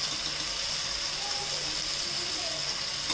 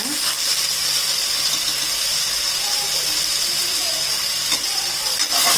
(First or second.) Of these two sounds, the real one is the first